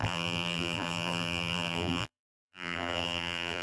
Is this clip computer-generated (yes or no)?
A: yes